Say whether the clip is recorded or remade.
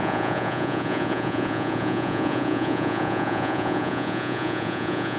remade